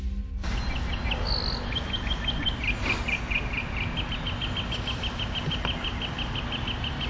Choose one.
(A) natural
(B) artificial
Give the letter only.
A